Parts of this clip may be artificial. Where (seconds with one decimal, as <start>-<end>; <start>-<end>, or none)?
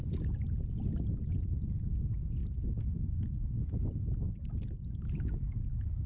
0.0-2.0; 4.2-5.5